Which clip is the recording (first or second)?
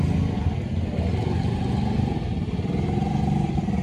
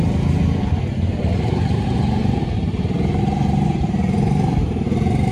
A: first